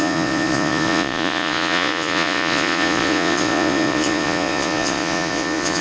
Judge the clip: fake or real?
fake